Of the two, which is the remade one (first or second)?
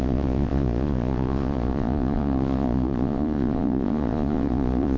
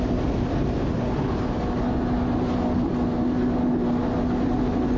first